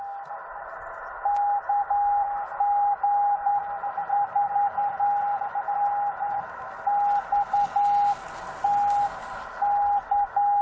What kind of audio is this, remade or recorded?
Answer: recorded